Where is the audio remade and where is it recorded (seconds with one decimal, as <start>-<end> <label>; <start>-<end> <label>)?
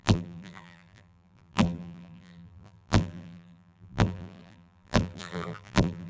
0.0-6.1 remade